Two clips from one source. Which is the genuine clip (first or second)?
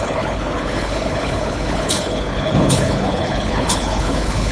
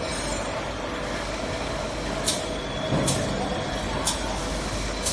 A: second